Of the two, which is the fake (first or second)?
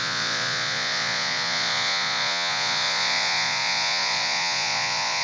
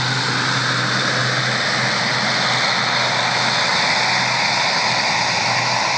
first